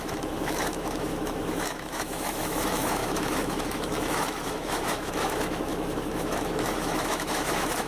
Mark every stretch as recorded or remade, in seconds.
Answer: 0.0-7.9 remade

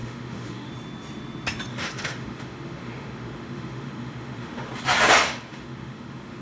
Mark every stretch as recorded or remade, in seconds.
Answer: 0.0-0.7 remade; 0.7-1.7 recorded; 1.7-4.7 remade; 4.7-5.2 recorded; 5.2-6.4 remade

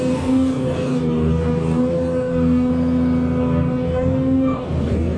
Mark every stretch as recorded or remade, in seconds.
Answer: 0.0-2.7 remade; 2.7-3.4 recorded; 3.4-5.2 remade

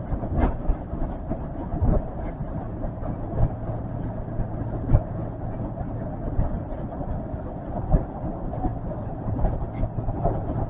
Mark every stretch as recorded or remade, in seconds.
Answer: 0.0-10.7 recorded

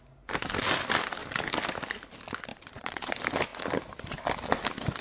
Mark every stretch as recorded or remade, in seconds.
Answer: 0.0-2.5 recorded; 2.5-3.1 remade; 3.1-5.0 recorded